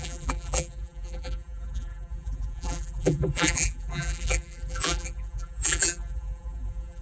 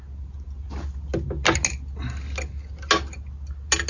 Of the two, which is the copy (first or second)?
first